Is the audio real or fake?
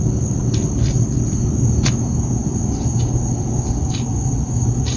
real